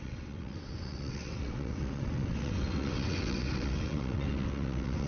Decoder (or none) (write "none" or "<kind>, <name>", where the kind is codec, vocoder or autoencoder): vocoder, WaveNeXt